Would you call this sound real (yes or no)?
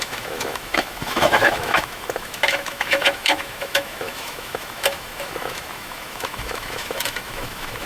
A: no